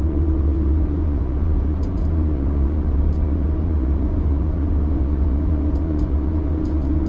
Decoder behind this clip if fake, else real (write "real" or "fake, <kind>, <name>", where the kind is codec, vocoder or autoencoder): fake, vocoder, Vocos